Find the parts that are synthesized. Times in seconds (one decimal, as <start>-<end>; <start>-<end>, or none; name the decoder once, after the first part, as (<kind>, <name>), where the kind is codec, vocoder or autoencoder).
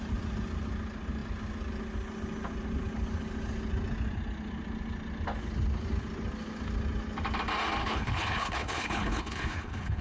7.8-10.0 (codec, HILCodec)